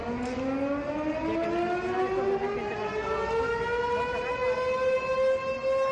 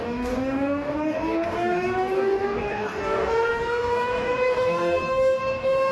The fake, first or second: second